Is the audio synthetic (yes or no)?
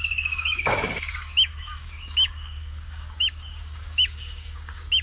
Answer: yes